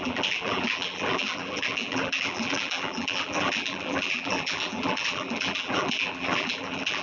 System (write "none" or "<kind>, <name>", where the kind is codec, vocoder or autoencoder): vocoder, BigVGAN v2